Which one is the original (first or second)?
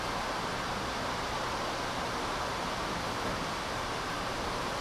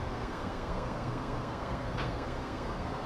first